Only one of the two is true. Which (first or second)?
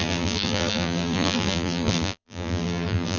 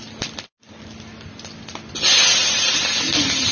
second